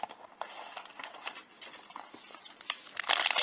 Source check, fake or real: real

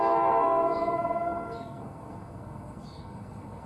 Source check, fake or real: fake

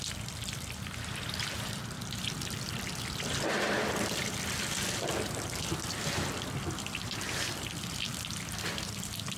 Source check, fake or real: real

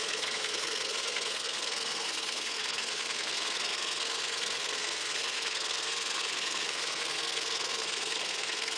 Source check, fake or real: fake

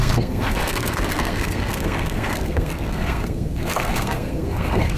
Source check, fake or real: fake